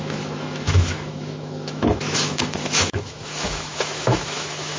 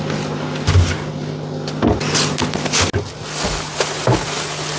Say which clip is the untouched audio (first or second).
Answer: second